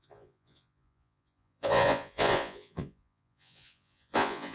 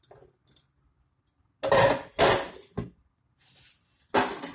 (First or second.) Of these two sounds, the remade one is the first